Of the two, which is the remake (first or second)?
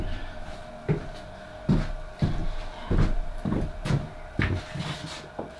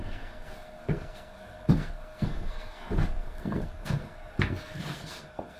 second